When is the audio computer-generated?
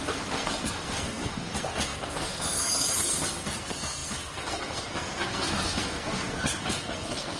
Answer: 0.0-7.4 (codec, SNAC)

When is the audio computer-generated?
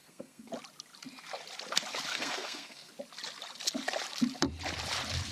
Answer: 0.0-0.5 (codec, SNAC); 2.1-2.9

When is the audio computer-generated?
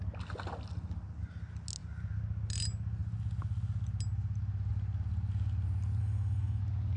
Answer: 6.0-6.6 (codec, SNAC)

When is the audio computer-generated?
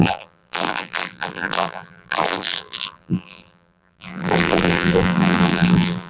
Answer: 0.0-6.1 (vocoder, BigVGAN v2)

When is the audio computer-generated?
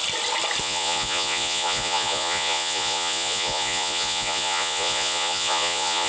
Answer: 0.6-6.1 (vocoder, Vocos)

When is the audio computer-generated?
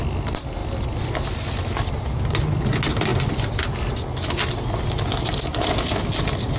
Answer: none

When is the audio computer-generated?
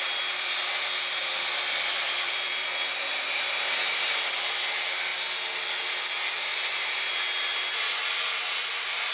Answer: 1.2-3.4 (vocoder, BigVGAN v2); 6.5-7.1